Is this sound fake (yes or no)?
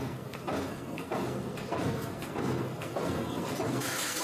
yes